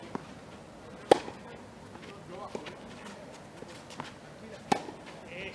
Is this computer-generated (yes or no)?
no